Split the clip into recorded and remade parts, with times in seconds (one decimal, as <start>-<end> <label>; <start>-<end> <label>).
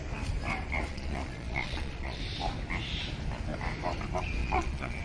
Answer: 0.0-0.9 recorded; 0.9-2.2 remade; 2.2-4.4 recorded; 4.4-5.0 remade